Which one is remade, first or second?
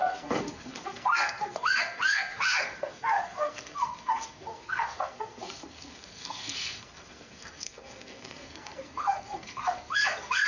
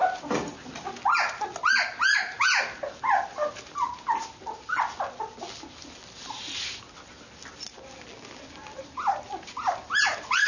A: first